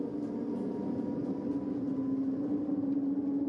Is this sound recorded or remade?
recorded